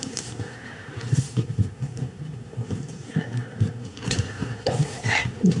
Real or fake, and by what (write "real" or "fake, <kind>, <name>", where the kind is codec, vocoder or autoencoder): fake, codec, SNAC